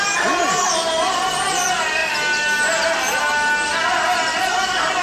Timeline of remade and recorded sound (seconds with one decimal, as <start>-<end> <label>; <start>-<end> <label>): 0.0-5.0 recorded